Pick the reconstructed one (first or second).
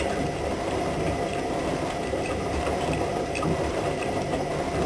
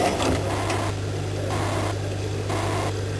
first